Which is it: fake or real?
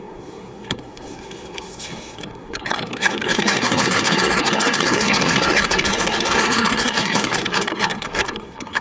fake